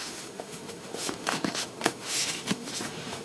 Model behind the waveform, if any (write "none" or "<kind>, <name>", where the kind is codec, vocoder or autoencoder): autoencoder, DAC-VAE